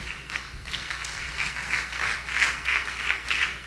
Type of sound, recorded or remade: remade